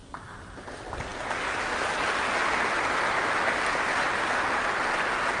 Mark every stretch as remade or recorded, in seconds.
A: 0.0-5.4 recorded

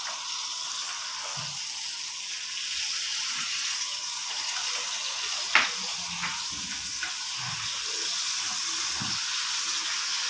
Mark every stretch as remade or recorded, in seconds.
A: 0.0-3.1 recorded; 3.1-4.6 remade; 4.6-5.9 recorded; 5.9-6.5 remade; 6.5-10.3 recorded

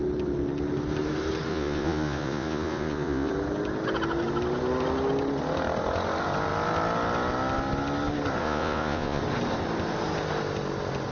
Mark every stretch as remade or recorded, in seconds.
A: 0.0-1.5 recorded; 1.5-3.3 remade; 3.3-8.4 recorded; 8.4-9.2 remade; 9.2-11.1 recorded